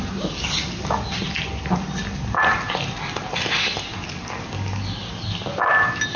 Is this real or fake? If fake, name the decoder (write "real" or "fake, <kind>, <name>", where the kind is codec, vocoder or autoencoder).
real